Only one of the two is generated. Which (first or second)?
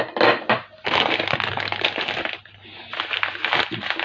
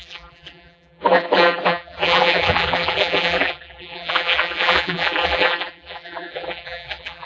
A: second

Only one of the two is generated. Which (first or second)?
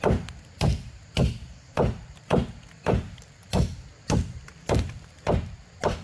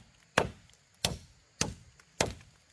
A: first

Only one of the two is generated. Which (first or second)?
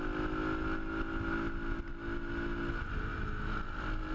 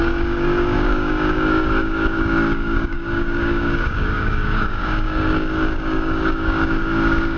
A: second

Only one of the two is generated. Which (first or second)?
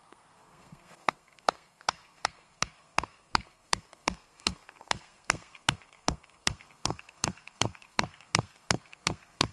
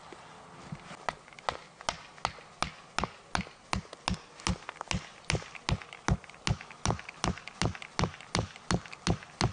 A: first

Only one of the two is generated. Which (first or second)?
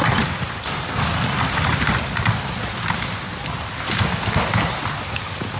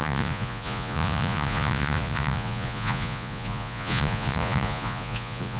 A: second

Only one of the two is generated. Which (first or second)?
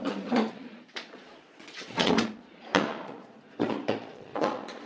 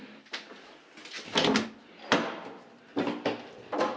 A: first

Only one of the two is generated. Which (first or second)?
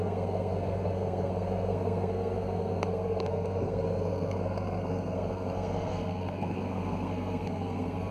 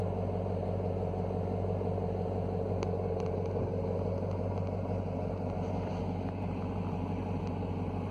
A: first